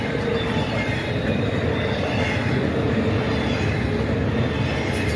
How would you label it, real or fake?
real